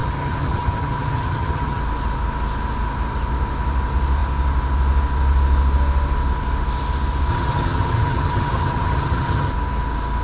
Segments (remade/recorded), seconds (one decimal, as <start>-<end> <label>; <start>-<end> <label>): 0.0-1.8 remade; 1.8-7.3 recorded; 7.3-9.5 remade; 9.5-10.2 recorded